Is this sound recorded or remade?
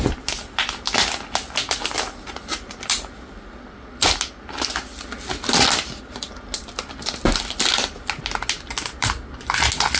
recorded